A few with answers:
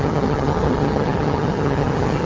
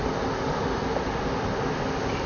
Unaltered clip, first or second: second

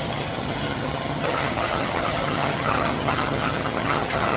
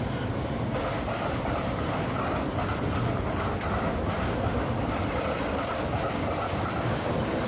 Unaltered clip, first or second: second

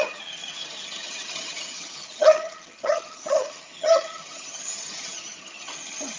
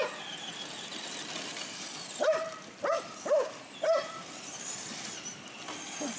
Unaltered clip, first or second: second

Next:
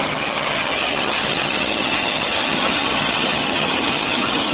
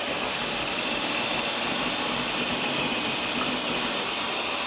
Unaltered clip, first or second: second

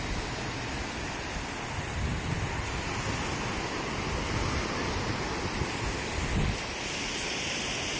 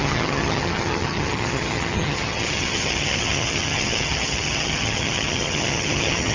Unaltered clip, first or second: first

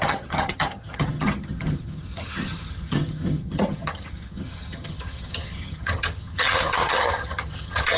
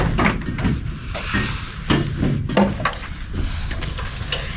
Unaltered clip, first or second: second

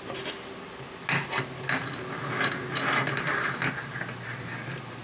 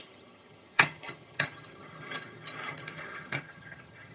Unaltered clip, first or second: first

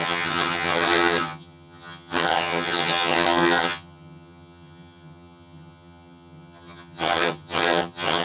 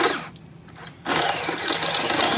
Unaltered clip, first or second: second